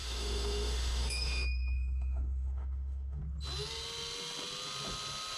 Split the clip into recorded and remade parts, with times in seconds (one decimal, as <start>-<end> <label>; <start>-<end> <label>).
0.0-3.2 remade; 3.2-5.4 recorded